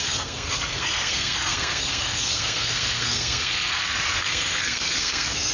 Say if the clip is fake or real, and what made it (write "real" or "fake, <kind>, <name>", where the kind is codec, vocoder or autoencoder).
fake, codec, SNAC